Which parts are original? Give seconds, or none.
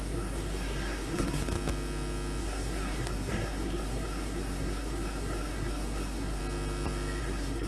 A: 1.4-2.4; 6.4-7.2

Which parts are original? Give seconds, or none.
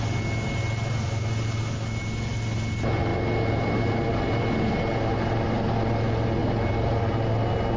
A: 0.0-7.8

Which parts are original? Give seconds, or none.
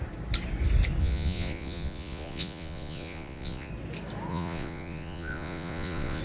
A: 0.0-1.0; 3.7-4.3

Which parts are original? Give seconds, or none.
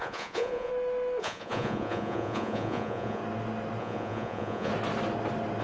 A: 0.7-1.2; 3.2-3.8; 4.7-5.6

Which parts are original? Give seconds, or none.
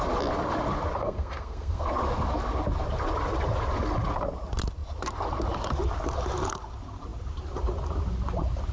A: 0.0-1.0; 1.9-8.7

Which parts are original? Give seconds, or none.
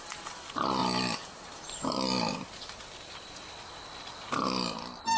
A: 0.0-5.2